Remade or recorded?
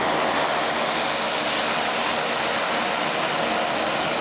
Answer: recorded